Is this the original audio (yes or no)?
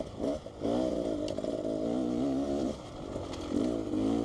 yes